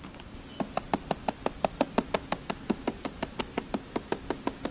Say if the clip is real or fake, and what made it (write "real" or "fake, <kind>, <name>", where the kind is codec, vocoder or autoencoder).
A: real